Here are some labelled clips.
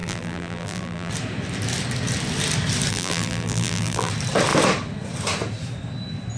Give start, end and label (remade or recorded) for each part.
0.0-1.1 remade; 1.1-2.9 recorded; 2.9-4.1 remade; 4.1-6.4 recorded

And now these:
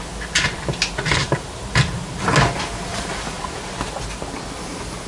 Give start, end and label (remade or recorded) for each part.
0.0-1.2 recorded; 1.2-2.1 remade; 2.1-2.9 recorded; 2.9-3.4 remade; 3.4-5.1 recorded

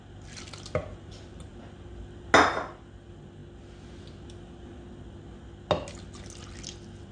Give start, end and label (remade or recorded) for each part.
0.0-7.1 recorded

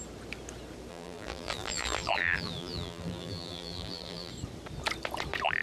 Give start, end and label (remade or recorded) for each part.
0.0-0.9 recorded; 0.9-4.3 remade; 4.3-5.6 recorded

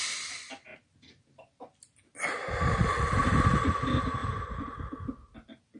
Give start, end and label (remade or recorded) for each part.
0.0-4.2 recorded; 4.2-4.8 remade; 4.8-5.8 recorded